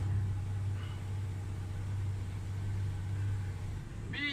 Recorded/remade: recorded